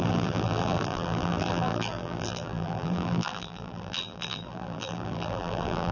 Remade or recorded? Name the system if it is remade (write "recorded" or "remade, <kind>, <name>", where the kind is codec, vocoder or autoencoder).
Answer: remade, vocoder, BigVGAN v2